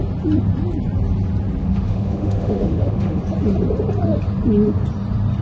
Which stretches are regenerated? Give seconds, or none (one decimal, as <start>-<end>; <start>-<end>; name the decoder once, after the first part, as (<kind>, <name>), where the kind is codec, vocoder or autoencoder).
1.6-3.2 (autoencoder, DAC-VAE)